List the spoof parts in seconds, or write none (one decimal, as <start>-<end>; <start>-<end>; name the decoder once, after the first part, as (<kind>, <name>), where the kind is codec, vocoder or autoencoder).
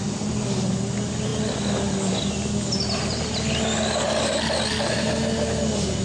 none